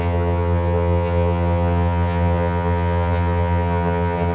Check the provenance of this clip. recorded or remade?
remade